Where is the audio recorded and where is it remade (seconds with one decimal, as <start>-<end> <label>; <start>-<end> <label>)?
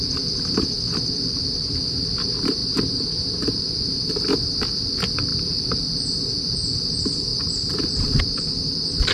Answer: 0.0-2.6 recorded; 2.6-3.6 remade; 3.6-9.1 recorded